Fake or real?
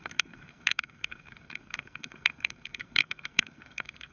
fake